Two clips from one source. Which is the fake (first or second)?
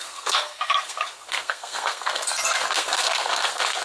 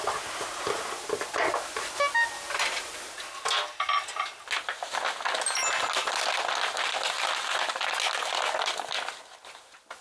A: first